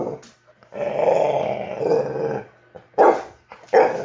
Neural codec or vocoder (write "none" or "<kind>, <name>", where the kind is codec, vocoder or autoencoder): none